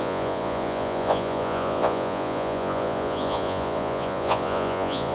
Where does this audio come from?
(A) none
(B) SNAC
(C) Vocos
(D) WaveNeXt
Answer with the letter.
C